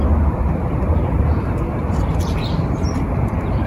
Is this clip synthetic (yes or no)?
yes